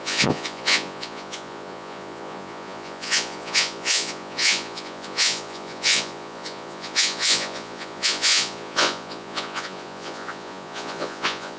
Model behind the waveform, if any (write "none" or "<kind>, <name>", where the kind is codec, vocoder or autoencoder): vocoder, Vocos